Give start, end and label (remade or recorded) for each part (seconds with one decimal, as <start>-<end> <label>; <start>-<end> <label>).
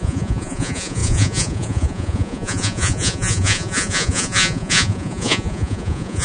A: 0.0-6.2 remade